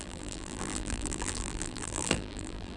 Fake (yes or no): yes